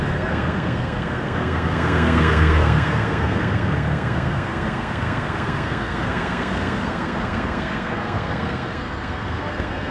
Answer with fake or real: fake